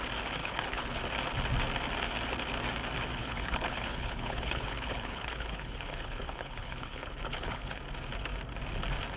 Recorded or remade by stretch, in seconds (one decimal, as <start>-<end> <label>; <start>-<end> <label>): 0.0-0.4 recorded; 0.4-1.0 remade; 1.0-3.2 recorded; 3.2-7.8 remade; 7.8-9.2 recorded